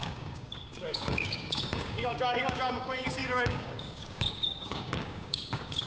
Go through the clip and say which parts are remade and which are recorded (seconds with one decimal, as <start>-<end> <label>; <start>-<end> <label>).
0.0-5.9 remade